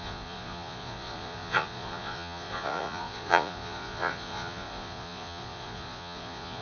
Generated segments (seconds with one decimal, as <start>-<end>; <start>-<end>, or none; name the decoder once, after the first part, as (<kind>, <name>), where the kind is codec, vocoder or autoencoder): 0.0-6.6 (vocoder, Vocos)